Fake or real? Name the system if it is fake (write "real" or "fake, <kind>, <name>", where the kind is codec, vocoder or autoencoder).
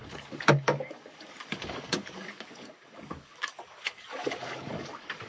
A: fake, codec, DAC